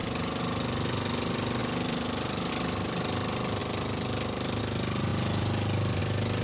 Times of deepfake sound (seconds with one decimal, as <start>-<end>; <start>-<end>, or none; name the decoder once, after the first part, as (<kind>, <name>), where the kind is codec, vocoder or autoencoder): 1.6-2.5 (vocoder, BigVGAN v2); 3.6-4.6; 5.1-6.0